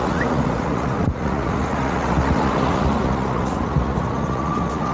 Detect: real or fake fake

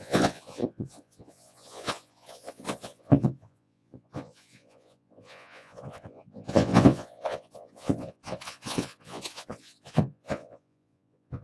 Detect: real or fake fake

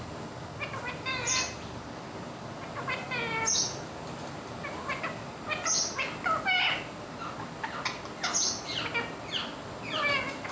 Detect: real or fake real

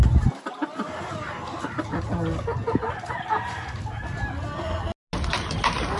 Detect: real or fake real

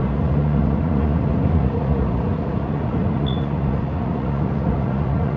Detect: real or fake fake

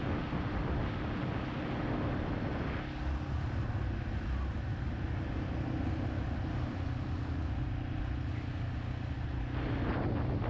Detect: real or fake real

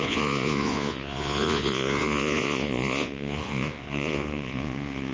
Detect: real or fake fake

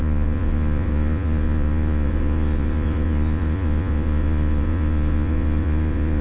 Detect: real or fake fake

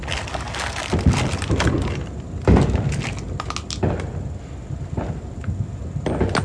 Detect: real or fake real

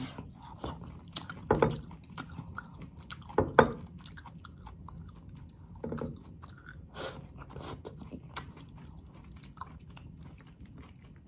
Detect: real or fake real